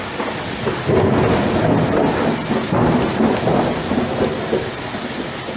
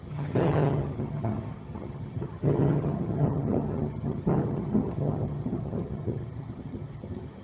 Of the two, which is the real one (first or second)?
first